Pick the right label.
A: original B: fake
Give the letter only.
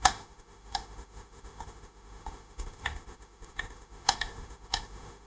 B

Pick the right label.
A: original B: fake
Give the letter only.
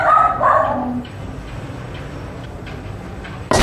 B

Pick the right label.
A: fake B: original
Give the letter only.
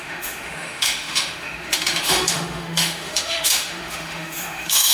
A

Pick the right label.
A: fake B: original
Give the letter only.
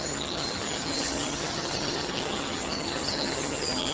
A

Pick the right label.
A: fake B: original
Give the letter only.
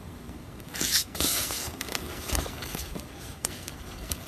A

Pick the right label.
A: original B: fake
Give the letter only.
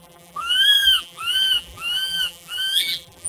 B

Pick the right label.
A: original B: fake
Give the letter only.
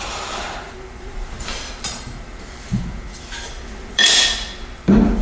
B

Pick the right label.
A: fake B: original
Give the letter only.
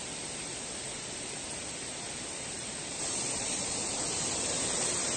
B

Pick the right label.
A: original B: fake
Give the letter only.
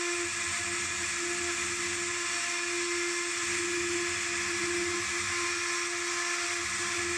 A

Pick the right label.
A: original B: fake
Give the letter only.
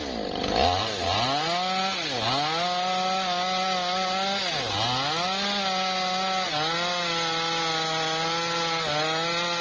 A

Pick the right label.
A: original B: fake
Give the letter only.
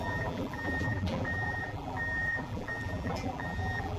B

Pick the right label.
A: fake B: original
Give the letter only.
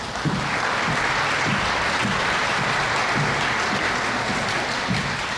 B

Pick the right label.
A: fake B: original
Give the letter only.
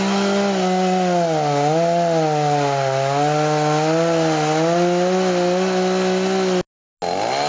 B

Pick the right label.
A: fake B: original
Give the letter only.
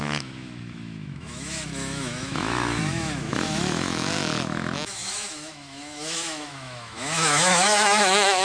A